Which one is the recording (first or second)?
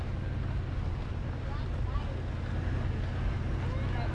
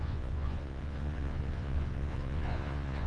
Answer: first